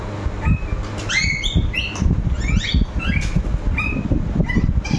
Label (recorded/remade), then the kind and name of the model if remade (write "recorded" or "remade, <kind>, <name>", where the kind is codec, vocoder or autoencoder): recorded